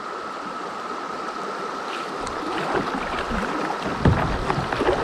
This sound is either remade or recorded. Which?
recorded